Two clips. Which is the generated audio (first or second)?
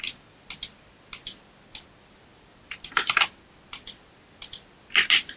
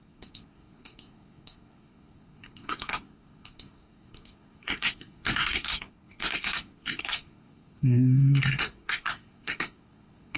second